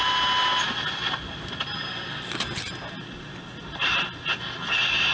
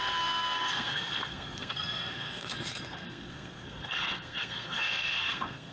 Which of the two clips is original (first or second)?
first